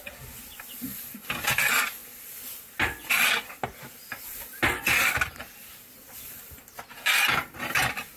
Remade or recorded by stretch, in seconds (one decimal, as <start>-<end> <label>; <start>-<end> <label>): 0.0-8.2 recorded